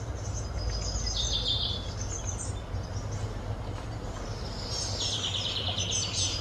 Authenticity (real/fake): real